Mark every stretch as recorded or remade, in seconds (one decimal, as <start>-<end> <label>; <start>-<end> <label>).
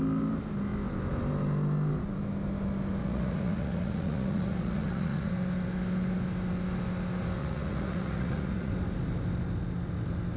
0.0-3.0 recorded; 3.0-5.3 remade; 5.3-7.4 recorded; 7.4-8.7 remade; 8.7-10.4 recorded